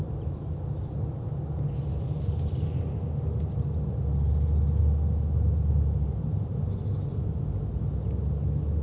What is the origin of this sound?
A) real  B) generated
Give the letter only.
A